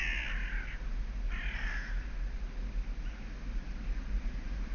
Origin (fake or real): real